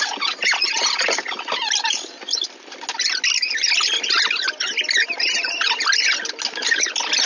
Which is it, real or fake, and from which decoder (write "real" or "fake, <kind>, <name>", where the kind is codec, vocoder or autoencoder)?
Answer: real